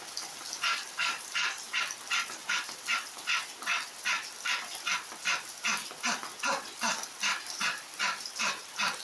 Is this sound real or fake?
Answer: real